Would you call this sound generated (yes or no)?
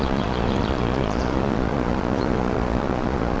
yes